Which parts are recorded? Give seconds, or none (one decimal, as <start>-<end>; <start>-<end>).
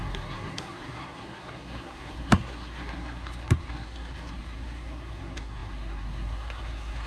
none